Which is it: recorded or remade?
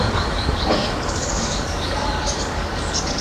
remade